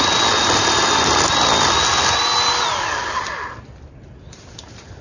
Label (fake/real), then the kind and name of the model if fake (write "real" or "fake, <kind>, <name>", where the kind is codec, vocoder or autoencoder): real